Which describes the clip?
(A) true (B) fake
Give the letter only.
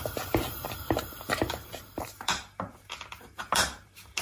B